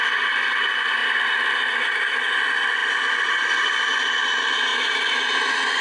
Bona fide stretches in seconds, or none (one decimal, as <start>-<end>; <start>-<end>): 0.0-5.8